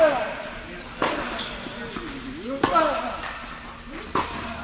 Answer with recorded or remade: recorded